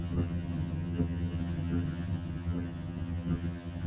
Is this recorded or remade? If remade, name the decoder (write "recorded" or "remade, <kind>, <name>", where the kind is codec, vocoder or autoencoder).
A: remade, vocoder, HiFi-GAN